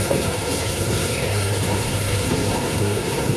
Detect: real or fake fake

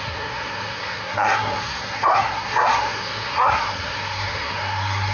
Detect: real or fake fake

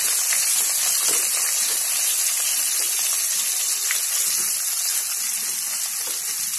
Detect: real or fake real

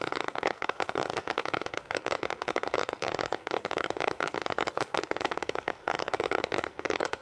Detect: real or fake fake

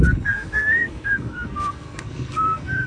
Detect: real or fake fake